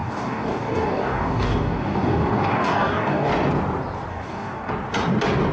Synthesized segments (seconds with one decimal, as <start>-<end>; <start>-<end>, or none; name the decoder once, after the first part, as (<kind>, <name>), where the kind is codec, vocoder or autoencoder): 0.0-3.3 (codec, DAC); 4.1-4.7